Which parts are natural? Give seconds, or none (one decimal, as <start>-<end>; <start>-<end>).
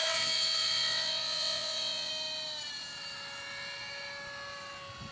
2.1-5.1